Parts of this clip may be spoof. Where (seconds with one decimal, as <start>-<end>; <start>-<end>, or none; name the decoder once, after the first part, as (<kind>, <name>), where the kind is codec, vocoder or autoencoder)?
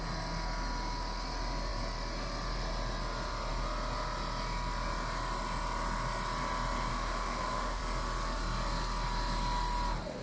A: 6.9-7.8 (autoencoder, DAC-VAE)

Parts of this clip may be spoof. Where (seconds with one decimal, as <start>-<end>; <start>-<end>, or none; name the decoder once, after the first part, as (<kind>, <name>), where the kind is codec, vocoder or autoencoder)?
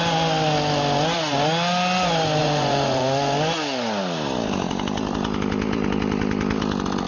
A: 2.4-3.0 (vocoder, Vocos)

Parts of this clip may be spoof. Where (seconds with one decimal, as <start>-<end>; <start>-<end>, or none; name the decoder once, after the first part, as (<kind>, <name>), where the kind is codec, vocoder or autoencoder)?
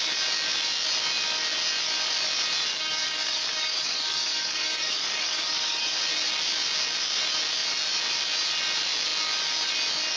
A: 2.7-6.0 (codec, DAC)